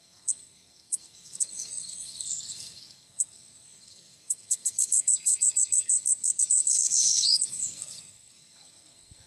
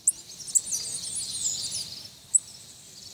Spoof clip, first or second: first